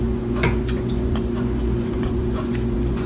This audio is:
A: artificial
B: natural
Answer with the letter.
A